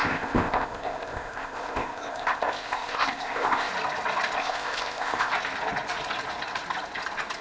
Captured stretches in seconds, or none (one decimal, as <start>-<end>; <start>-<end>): 3.7-4.4; 5.3-7.4